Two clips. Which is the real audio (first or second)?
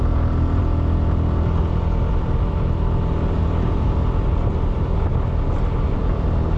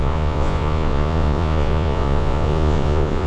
first